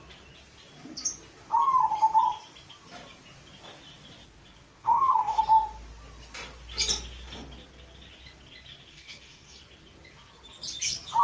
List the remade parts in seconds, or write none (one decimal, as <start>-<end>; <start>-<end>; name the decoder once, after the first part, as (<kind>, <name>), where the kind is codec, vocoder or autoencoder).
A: 4.8-5.4 (codec, DAC); 8.9-9.6